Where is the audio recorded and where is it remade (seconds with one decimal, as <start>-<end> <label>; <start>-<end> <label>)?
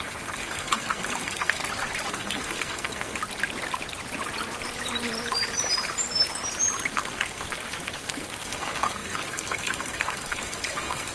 0.0-1.6 remade; 1.6-2.1 recorded; 2.1-3.2 remade; 3.2-6.9 recorded; 6.9-11.1 remade